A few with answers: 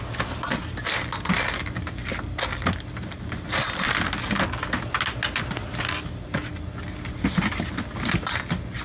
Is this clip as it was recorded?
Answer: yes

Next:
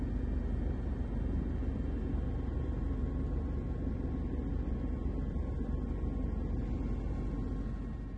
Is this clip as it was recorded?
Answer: yes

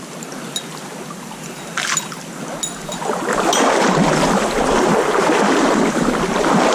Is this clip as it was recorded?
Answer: yes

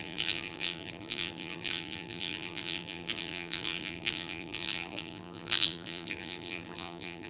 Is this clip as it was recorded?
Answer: no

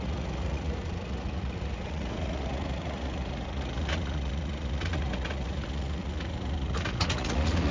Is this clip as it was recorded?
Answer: no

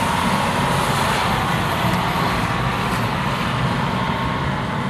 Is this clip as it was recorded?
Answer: yes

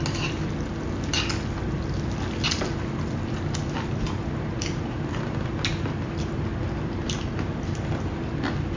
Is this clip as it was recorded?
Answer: yes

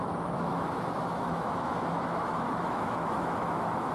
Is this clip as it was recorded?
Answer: no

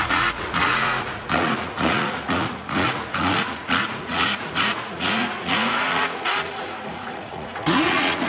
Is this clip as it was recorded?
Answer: no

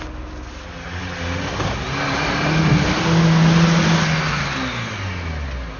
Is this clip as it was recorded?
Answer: yes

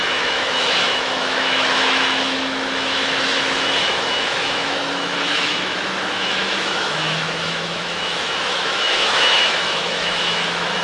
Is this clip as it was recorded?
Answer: no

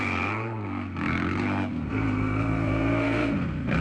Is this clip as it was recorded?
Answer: no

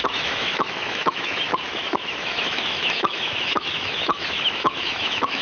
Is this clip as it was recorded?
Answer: no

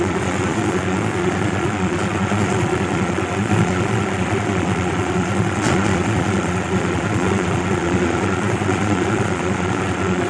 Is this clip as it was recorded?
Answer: no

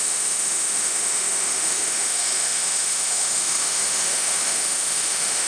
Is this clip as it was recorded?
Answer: no